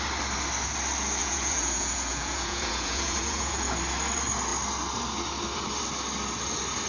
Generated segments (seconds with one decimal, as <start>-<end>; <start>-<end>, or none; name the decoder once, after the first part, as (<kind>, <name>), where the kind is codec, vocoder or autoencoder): 1.2-3.7 (vocoder, Vocos)